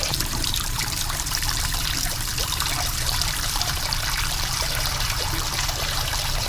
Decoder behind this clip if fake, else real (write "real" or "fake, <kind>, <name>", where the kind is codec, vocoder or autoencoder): fake, vocoder, BigVGAN v2